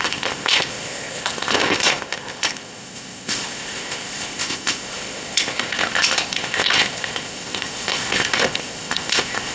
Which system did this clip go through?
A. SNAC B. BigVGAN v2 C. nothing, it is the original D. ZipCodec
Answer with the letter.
D